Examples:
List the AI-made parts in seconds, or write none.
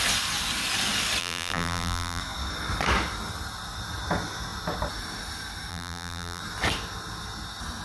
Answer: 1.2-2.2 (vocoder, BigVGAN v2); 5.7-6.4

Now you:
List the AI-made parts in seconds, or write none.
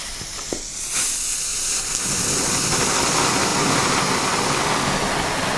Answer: none